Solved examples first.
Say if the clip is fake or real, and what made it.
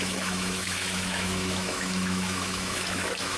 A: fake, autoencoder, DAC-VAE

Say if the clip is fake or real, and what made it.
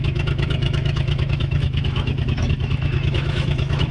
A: fake, autoencoder, DAC-VAE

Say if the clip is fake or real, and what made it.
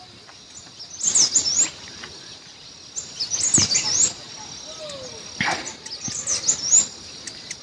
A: real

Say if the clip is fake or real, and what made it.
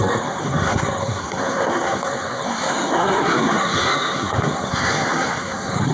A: fake, codec, SNAC